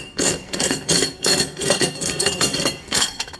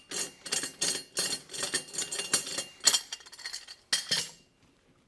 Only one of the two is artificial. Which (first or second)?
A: first